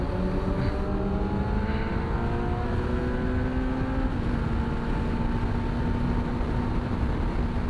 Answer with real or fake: real